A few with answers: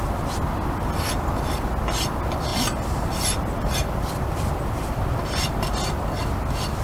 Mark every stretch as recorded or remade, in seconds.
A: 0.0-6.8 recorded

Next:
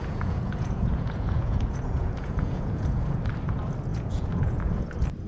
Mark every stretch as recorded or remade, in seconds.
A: 0.0-3.2 remade; 3.2-3.9 recorded; 3.9-4.8 remade; 4.8-5.3 recorded